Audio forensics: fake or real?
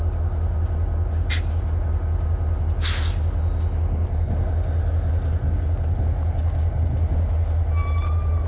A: real